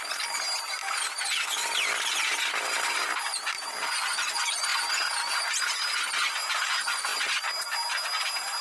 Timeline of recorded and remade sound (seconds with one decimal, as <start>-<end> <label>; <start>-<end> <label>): 0.0-8.6 recorded